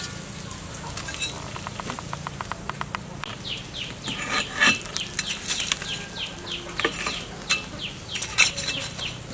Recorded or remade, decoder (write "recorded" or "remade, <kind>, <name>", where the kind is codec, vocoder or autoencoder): recorded